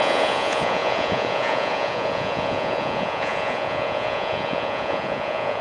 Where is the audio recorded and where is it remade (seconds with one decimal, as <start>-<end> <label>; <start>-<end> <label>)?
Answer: 0.0-5.6 remade